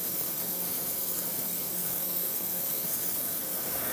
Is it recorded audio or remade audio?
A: remade